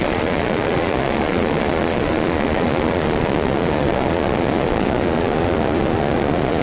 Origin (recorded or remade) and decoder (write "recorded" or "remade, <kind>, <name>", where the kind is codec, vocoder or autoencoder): remade, vocoder, Vocos